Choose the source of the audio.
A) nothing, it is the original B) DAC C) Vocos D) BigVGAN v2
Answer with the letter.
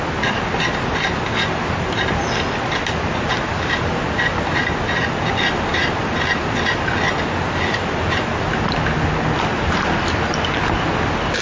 A